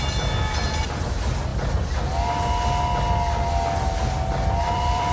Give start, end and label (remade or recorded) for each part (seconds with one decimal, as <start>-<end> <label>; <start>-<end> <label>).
0.0-1.5 remade; 1.5-4.6 recorded; 4.6-5.1 remade